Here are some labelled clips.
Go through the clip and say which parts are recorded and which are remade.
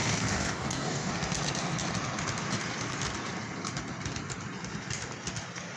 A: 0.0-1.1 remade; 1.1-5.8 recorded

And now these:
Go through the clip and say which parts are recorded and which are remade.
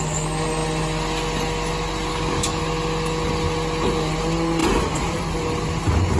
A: 0.0-2.1 recorded; 2.1-2.6 remade; 2.6-6.2 recorded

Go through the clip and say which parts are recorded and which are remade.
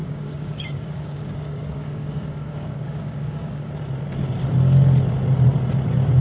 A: 0.0-3.7 remade; 3.7-6.2 recorded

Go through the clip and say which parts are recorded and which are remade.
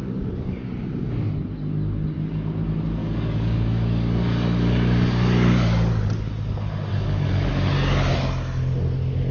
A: 0.0-0.7 remade; 0.7-3.0 recorded; 3.0-5.9 remade; 5.9-6.9 recorded; 6.9-7.7 remade; 7.7-9.3 recorded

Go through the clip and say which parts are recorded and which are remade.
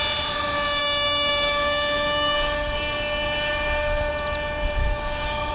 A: 0.0-0.8 recorded; 0.8-4.1 remade; 4.1-4.8 recorded; 4.8-5.5 remade